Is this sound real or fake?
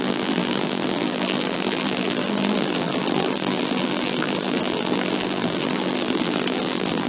fake